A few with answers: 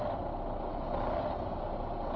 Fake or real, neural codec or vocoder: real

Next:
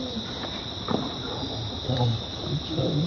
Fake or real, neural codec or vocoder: fake, vocoder, BigVGAN v2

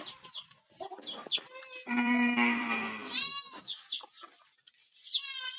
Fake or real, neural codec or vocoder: fake, vocoder, BigVGAN v2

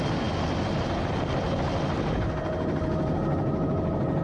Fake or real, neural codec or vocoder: real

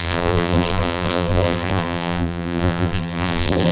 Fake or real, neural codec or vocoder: fake, vocoder, BigVGAN v2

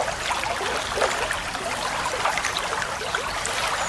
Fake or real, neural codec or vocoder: real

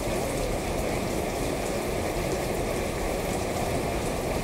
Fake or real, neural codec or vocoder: fake, vocoder, BigVGAN v2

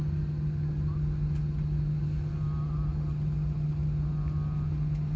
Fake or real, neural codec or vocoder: real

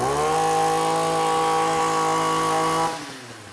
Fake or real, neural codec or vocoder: real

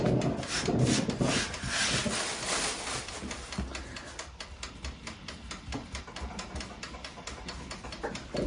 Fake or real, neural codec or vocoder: real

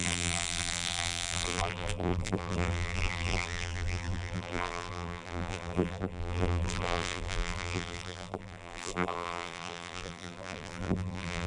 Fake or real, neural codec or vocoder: fake, vocoder, BigVGAN v2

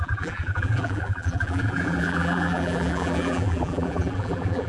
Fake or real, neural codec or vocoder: fake, vocoder, BigVGAN v2